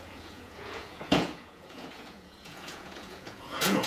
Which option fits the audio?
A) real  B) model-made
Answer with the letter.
B